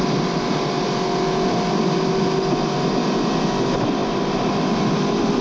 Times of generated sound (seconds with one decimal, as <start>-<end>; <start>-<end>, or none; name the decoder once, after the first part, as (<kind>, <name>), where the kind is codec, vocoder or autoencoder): none